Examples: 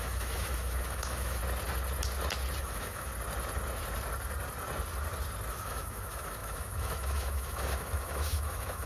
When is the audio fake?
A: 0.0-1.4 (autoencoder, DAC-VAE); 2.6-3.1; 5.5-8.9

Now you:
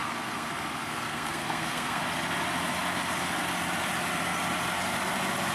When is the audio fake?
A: 0.0-2.0 (codec, SNAC)

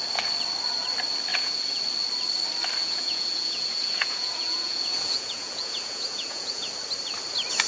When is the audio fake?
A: 1.3-1.8 (vocoder, Vocos); 2.8-6.7

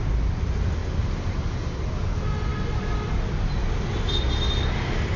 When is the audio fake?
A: 0.8-1.9 (vocoder, BigVGAN v2)

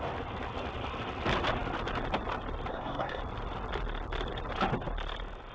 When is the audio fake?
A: 2.7-3.2 (codec, SNAC)